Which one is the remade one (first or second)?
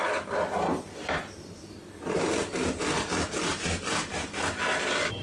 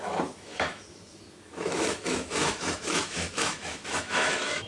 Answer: second